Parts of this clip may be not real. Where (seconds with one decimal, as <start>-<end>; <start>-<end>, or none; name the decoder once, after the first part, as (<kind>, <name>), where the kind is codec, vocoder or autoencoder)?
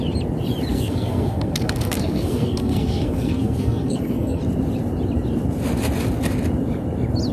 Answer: 0.7-4.4 (codec, SNAC)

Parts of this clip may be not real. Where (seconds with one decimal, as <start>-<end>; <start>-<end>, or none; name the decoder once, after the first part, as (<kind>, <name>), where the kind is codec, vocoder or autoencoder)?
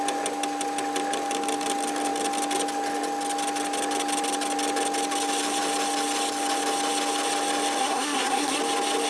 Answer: 7.8-8.6 (codec, SNAC)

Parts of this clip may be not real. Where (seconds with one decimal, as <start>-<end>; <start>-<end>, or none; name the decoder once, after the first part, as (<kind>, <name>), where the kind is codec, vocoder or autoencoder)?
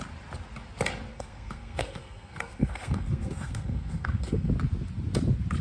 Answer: 1.1-4.5 (codec, SNAC)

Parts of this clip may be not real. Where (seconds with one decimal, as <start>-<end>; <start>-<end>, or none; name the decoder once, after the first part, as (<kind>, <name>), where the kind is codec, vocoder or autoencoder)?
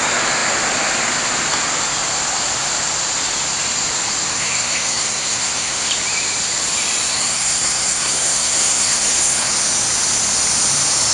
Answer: 4.3-5.9 (codec, SNAC); 7.1-9.5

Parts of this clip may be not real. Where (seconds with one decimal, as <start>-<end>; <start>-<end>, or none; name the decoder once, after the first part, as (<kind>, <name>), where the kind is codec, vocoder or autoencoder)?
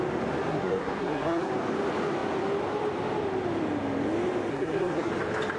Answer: 0.5-1.5 (codec, SNAC); 4.5-5.1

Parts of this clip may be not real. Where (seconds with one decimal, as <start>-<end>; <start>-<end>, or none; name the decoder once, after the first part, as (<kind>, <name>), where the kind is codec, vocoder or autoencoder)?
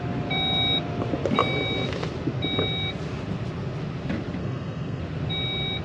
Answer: 4.4-5.0 (codec, SNAC)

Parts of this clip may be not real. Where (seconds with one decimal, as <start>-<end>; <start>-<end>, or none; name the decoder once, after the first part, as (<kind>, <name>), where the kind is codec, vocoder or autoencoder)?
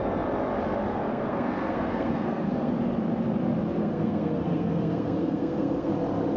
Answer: 0.9-2.7 (codec, SNAC); 3.8-5.9